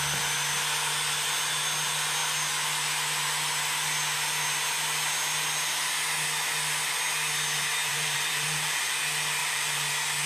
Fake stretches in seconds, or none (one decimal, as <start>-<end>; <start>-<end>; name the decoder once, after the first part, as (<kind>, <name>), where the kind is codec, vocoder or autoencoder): 7.9-9.0 (vocoder, BigVGAN v2); 9.4-9.9